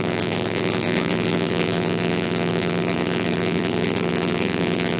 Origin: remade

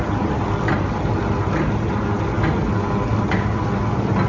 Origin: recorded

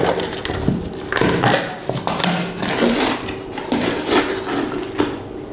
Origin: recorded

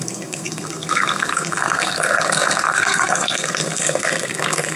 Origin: remade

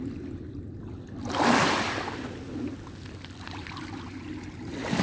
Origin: recorded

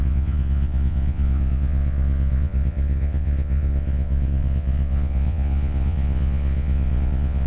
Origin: remade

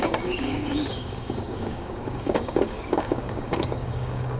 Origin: remade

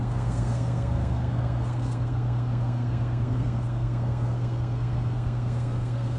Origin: remade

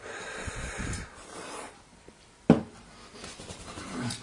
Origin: remade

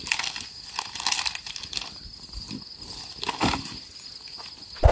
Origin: recorded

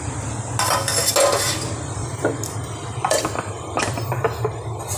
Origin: recorded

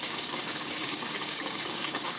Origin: remade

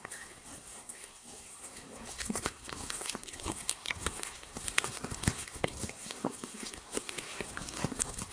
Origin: remade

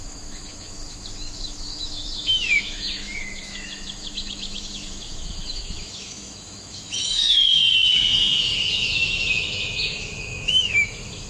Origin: remade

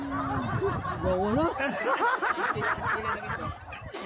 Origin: recorded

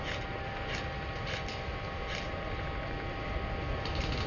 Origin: recorded